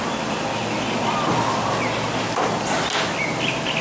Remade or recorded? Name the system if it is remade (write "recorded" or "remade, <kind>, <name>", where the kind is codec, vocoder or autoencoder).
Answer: recorded